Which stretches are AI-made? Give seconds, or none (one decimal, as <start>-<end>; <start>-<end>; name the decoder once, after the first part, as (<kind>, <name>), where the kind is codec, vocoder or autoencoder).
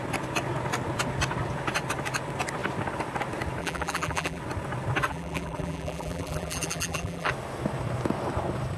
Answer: 3.6-4.4 (vocoder, BigVGAN v2); 5.1-7.3